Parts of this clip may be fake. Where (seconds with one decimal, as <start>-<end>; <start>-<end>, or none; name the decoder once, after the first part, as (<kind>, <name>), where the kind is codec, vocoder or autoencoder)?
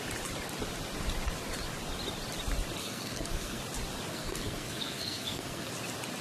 2.8-3.6 (codec, SNAC); 4.1-5.7